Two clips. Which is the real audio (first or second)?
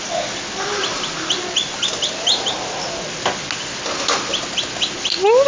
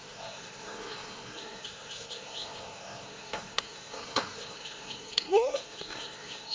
first